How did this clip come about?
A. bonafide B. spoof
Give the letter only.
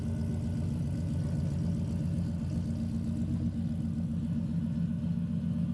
A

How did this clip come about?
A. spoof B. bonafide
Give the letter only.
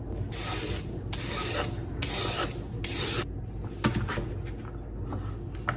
B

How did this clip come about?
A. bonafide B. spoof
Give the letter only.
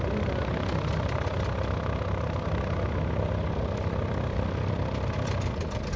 A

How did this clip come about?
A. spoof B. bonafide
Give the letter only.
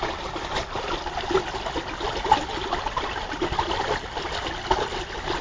B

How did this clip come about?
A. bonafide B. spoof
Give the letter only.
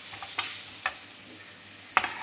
A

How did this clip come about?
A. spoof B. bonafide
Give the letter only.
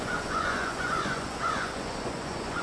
A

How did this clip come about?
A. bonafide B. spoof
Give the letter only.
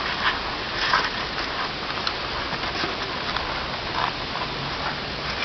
A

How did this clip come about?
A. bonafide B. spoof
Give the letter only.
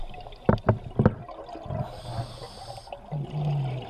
A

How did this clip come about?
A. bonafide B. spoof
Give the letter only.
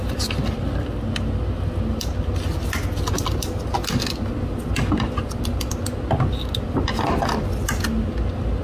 A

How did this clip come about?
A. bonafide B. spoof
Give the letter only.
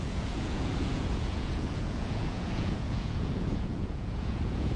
B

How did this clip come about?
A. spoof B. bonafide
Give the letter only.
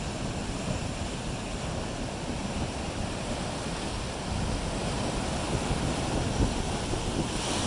B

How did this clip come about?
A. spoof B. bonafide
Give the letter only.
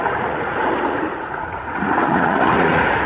A